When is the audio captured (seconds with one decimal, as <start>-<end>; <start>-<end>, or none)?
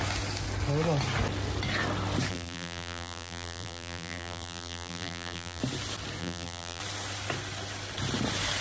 0.0-2.3; 5.6-6.2; 6.8-8.6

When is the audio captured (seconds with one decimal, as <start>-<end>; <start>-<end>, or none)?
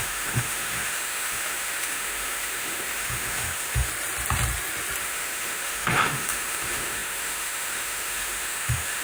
3.9-5.0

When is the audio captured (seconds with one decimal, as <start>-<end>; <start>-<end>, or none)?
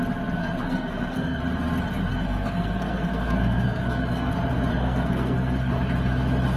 0.0-0.4; 1.4-2.1; 4.3-4.7; 5.7-6.6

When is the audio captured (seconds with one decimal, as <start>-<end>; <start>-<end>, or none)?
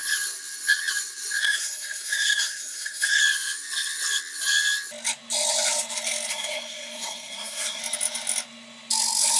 0.0-1.4; 3.2-6.3; 7.8-9.4